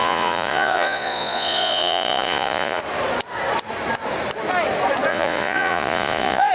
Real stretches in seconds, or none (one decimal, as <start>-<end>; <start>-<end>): 2.8-5.1

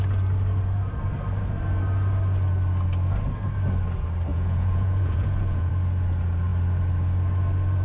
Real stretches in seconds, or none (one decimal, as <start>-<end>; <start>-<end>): 0.0-4.3; 5.7-7.8

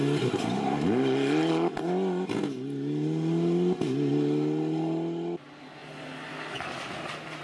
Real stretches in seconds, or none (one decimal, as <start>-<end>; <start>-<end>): 0.0-7.4

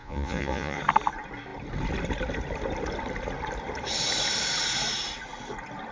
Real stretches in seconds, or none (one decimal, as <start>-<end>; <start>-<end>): 0.8-5.9

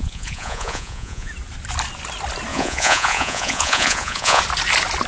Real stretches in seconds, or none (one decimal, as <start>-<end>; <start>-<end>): 1.3-2.5; 4.4-5.1

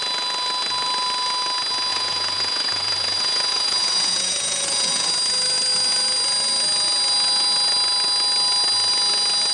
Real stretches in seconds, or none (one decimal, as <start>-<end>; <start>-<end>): 0.0-1.9; 5.1-9.5

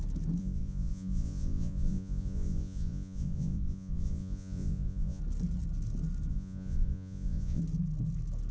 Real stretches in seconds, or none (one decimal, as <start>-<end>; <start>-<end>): 0.0-0.4; 5.2-6.3; 7.6-8.5